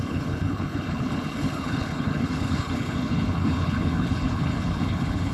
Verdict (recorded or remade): remade